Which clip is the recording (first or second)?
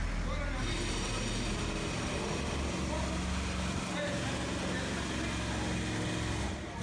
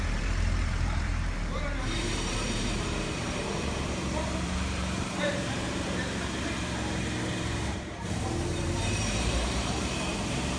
first